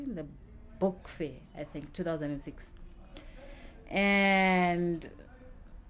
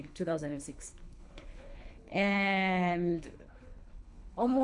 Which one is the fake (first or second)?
second